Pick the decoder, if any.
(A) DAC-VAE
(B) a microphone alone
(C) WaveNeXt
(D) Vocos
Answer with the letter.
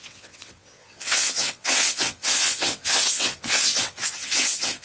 C